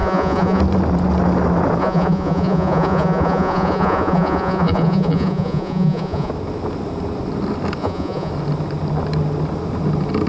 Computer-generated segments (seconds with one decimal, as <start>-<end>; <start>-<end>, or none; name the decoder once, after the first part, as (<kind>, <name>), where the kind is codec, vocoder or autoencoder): 0.0-0.6 (vocoder, Vocos); 1.8-6.3; 7.8-8.3